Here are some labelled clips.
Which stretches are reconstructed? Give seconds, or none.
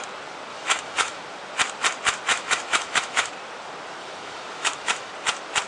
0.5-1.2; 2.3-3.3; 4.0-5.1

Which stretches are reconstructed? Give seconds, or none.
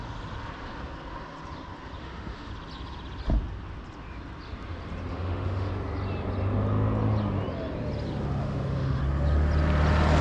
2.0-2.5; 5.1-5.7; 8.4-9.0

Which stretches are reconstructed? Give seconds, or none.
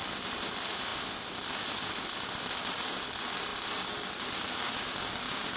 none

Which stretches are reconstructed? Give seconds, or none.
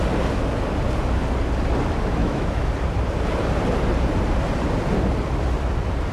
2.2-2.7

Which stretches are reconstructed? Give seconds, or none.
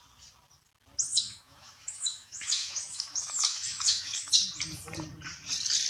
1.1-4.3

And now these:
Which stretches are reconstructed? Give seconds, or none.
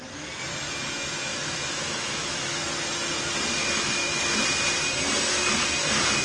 1.3-2.6; 3.6-4.4